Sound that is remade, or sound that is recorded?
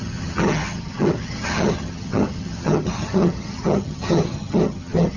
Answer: remade